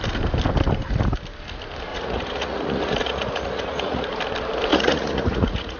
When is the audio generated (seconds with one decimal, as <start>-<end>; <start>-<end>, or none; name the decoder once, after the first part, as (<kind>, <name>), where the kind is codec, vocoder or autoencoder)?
1.9-4.2 (vocoder, Vocos); 4.7-5.8

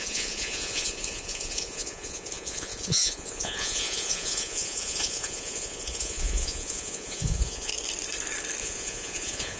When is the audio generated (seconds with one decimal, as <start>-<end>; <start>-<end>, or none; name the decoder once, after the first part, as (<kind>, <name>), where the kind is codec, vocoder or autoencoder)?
0.0-7.7 (vocoder, Vocos); 8.6-9.6

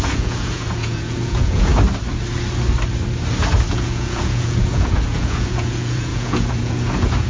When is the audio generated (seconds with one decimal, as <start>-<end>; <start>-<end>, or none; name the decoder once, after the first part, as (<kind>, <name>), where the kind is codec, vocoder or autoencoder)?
0.0-1.7 (vocoder, Vocos); 3.7-7.3

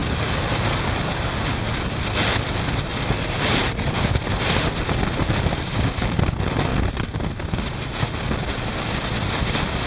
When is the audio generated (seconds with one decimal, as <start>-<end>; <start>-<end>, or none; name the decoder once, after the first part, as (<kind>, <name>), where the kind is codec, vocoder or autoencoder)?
none

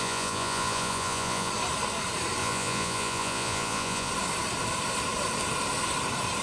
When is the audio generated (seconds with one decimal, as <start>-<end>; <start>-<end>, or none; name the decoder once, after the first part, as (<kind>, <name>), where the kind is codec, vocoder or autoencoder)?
0.0-1.5 (vocoder, Vocos); 2.4-4.1